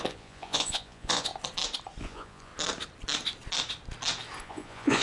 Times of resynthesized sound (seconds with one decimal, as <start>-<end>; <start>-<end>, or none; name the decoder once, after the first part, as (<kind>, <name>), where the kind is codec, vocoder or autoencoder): 0.0-1.3 (vocoder, Vocos); 2.0-2.5; 4.4-5.0